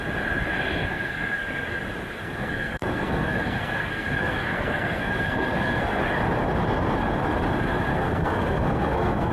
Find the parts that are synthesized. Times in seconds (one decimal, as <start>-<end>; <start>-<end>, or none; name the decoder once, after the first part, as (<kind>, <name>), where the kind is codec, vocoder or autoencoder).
0.8-1.8 (codec, SNAC); 2.2-6.0; 7.9-9.3

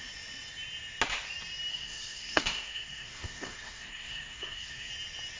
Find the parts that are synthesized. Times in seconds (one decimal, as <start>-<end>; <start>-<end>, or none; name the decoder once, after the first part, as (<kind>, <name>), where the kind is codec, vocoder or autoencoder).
1.7-4.9 (codec, SNAC)

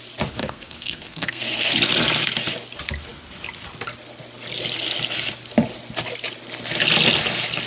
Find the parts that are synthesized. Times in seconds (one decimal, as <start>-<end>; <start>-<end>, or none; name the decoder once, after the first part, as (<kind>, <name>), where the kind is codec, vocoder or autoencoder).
0.4-1.7 (codec, SNAC)

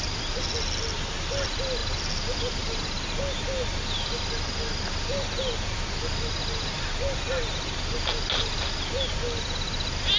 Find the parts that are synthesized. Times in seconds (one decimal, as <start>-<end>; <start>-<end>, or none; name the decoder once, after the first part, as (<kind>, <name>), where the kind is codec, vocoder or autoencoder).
none

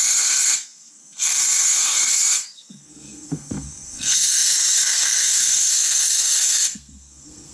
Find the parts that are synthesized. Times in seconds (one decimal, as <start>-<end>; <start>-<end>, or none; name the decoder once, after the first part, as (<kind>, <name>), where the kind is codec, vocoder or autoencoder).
0.0-7.5 (codec, SNAC)